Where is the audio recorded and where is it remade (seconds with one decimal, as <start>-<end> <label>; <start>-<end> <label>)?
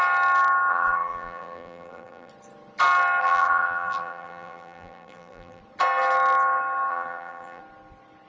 0.0-0.7 recorded; 0.7-2.3 remade; 2.3-3.2 recorded; 3.2-5.6 remade; 5.6-6.9 recorded; 6.9-7.6 remade; 7.6-8.3 recorded